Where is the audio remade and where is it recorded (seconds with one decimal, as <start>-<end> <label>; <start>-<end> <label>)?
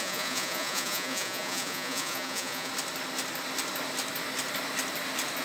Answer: 0.0-2.7 remade; 2.7-5.4 recorded